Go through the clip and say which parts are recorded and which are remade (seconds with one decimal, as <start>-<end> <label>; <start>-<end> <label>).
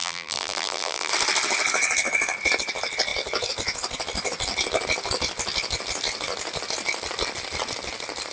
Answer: 0.0-1.1 remade; 1.1-8.3 recorded